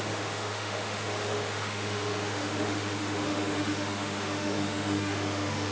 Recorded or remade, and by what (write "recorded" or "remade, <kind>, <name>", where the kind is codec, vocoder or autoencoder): remade, autoencoder, DAC-VAE